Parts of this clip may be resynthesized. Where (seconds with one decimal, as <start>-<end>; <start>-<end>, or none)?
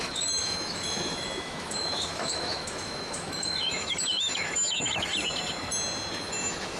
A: 0.0-5.1; 6.1-6.8